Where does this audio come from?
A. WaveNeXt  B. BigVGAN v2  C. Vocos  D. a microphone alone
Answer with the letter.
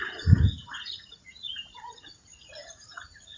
C